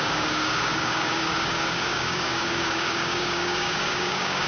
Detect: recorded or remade remade